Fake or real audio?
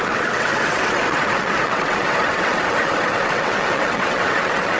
fake